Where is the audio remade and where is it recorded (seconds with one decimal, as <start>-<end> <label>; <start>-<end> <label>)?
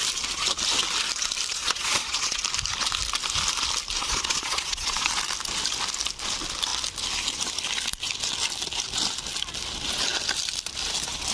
0.0-1.5 recorded; 1.5-2.4 remade; 2.4-4.0 recorded; 4.0-5.1 remade; 5.1-11.3 recorded